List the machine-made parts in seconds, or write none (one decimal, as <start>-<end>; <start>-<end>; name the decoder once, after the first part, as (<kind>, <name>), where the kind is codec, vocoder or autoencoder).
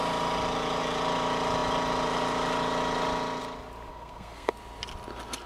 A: 3.9-4.5 (codec, SNAC)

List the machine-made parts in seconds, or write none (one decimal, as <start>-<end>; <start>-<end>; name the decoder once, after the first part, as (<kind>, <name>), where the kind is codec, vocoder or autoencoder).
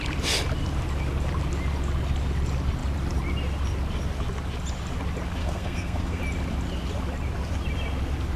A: 5.4-6.2 (codec, SNAC)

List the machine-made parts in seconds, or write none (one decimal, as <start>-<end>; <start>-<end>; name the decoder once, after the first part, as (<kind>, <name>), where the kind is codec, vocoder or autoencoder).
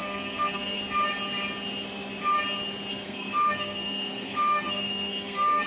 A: 0.0-0.8 (codec, SNAC); 2.9-5.7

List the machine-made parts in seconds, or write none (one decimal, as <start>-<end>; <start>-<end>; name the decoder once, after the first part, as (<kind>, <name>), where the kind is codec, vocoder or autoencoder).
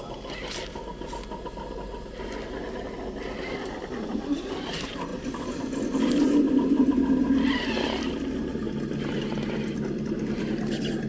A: none